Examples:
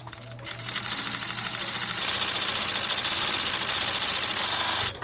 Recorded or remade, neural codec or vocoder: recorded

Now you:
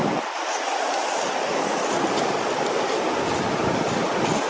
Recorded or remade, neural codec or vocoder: remade, vocoder, BigVGAN v2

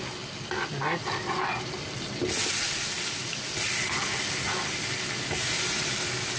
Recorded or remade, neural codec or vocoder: recorded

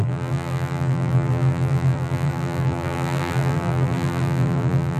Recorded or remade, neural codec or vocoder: remade, vocoder, BigVGAN v2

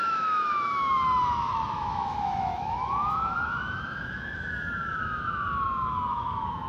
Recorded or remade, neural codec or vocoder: remade, autoencoder, DAC-VAE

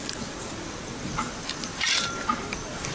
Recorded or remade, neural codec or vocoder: remade, vocoder, BigVGAN v2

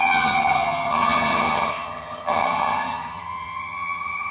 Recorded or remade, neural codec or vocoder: remade, vocoder, HiFi-GAN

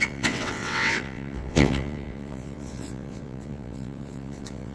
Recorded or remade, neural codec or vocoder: remade, vocoder, WaveNeXt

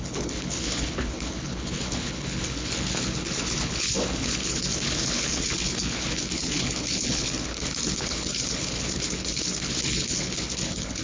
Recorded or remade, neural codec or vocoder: remade, codec, HILCodec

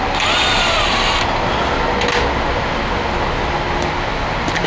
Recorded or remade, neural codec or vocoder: recorded